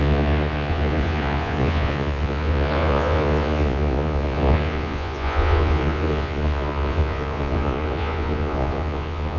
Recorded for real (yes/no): no